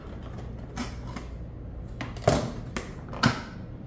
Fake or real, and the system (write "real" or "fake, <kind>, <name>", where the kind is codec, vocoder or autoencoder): real